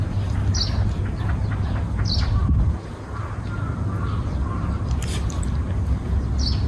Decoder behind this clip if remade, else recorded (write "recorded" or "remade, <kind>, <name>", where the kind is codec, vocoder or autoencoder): recorded